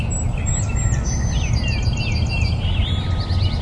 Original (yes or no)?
yes